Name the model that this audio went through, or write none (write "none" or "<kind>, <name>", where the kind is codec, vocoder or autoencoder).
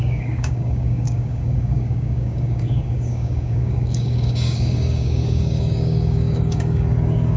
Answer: codec, DAC